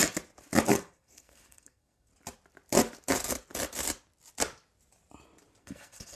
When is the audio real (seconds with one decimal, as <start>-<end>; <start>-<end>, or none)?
0.0-0.7; 2.1-5.6